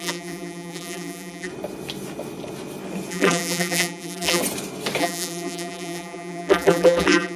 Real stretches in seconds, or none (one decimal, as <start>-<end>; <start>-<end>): 1.5-3.1; 4.4-5.0